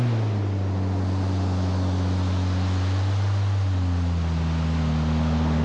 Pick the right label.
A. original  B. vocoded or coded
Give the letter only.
A